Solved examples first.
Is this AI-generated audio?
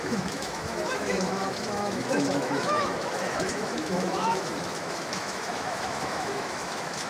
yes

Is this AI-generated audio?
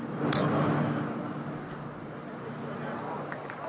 no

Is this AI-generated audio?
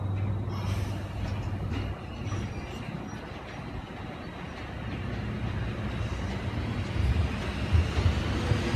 no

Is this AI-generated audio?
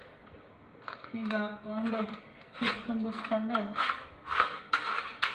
yes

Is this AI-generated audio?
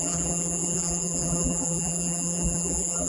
yes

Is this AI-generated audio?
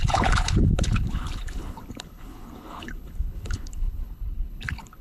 yes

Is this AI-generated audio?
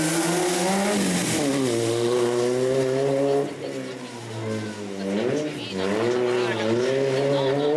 no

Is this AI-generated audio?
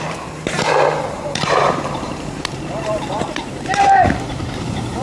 yes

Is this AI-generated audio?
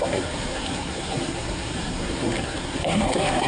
yes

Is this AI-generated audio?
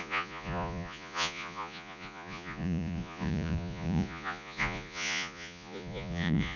yes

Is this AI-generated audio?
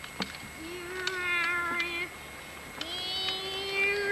no